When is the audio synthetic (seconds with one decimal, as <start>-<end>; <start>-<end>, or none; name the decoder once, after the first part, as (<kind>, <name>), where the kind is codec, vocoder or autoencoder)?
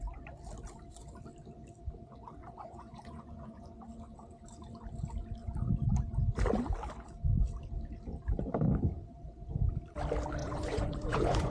2.4-3.7 (vocoder, Vocos); 10.4-11.5